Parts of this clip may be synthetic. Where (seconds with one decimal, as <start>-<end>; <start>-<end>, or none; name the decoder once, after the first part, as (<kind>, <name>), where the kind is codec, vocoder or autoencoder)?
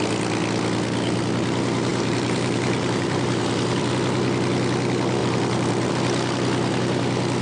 1.9-3.9 (vocoder, BigVGAN v2); 5.2-5.9